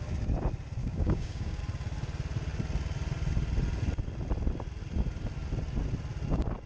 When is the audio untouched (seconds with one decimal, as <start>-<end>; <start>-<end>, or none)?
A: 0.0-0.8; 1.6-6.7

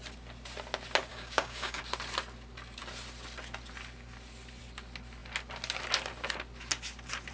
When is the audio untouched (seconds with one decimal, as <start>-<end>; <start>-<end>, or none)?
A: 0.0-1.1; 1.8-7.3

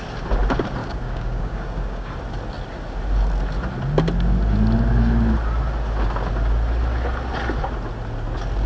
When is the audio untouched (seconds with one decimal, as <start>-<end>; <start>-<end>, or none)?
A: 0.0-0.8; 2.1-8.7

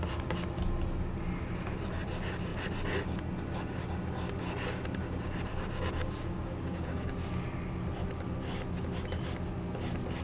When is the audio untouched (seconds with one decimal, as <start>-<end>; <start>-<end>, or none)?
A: 0.0-5.5; 7.1-10.2

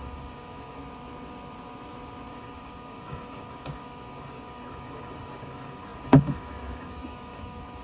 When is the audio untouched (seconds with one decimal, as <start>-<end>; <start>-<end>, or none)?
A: 0.8-2.3